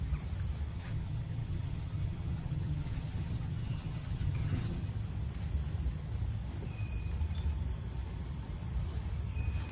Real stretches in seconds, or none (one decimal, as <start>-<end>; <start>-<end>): 0.0-0.7; 4.9-9.7